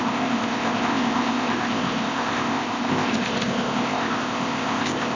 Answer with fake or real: fake